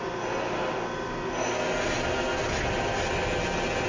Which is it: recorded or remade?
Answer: recorded